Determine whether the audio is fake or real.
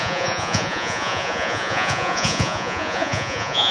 fake